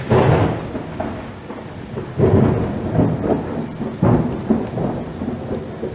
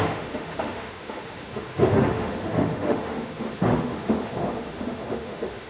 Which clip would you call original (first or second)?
first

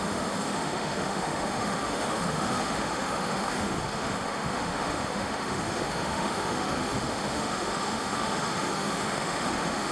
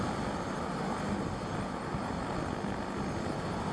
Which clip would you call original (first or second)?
second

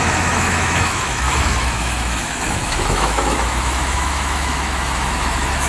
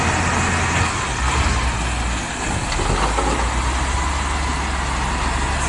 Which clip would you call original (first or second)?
second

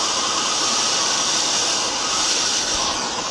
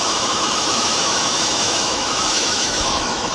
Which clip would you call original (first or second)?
first